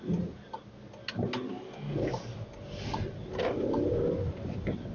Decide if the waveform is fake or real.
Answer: real